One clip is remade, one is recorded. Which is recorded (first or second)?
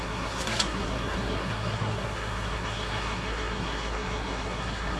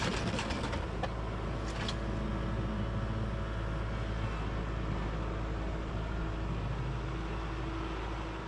second